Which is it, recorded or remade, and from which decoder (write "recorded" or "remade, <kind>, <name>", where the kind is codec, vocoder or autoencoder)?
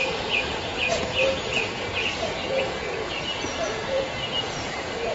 remade, vocoder, Vocos